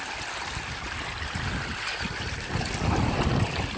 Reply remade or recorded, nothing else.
recorded